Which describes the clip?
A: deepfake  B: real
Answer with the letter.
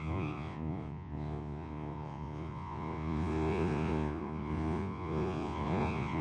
A